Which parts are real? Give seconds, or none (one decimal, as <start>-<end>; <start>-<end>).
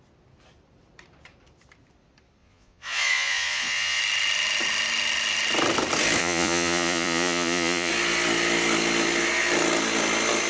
0.0-2.4; 4.0-6.2; 7.9-10.5